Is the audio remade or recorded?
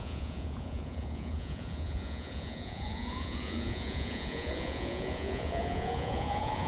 remade